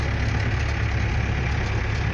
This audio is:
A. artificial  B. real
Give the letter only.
B